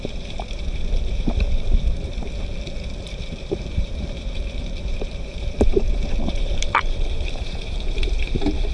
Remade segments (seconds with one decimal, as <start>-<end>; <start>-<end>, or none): 0.0-2.1; 3.0-8.7